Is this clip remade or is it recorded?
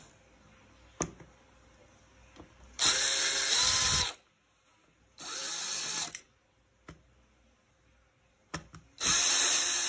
recorded